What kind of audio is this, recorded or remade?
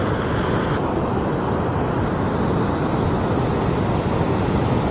recorded